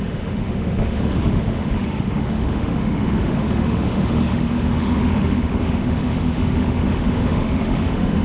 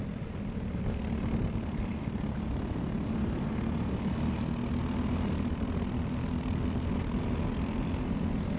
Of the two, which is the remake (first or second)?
first